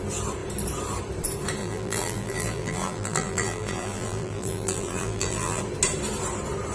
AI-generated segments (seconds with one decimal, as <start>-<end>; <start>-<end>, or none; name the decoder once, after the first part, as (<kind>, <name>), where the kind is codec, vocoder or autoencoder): 1.6-5.6 (vocoder, BigVGAN v2)